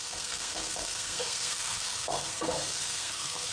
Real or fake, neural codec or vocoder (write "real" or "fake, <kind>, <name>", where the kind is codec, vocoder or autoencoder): fake, codec, SNAC